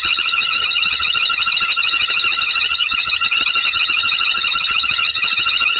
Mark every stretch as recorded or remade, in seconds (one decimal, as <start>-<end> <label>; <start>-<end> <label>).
0.0-5.8 remade